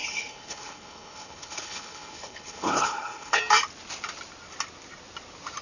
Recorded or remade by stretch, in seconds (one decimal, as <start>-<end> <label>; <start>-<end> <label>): 0.0-3.4 remade; 3.4-5.6 recorded